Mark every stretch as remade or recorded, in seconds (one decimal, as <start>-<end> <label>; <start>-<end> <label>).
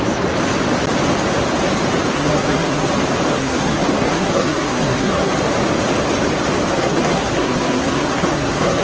0.0-2.1 recorded; 2.1-2.9 remade; 2.9-3.4 recorded; 3.4-5.3 remade; 5.3-6.7 recorded; 6.7-8.8 remade